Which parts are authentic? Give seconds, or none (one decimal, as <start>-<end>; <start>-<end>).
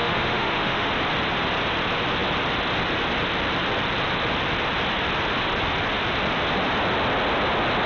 0.9-7.9